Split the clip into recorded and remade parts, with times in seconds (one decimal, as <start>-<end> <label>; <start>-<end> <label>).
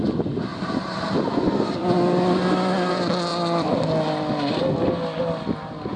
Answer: 0.0-6.0 recorded